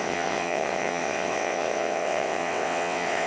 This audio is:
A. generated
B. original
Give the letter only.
A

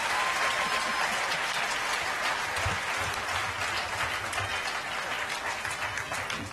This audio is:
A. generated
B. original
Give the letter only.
B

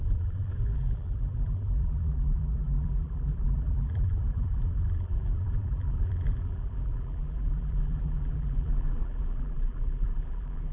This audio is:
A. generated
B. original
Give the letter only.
A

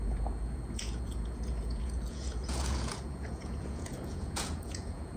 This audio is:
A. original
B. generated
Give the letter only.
B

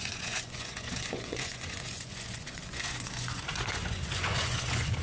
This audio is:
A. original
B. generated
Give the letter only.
B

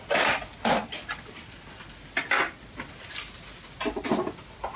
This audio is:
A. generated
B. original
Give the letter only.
B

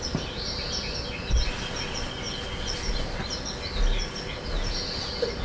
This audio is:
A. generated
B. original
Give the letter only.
B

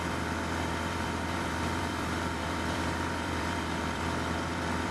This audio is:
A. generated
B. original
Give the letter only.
A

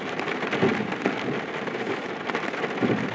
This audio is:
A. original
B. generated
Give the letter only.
A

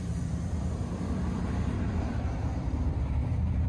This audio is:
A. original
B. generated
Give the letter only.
B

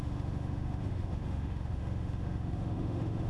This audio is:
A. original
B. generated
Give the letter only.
B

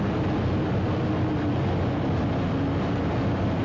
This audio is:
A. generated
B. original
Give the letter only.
B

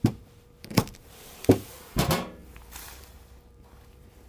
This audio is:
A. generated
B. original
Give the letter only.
A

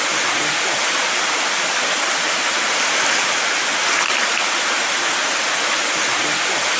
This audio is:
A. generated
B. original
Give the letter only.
B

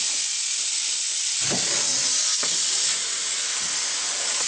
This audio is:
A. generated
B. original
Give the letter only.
B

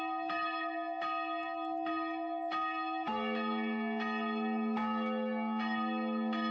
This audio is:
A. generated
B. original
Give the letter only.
B